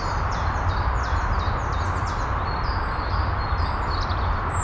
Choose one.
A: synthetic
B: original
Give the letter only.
B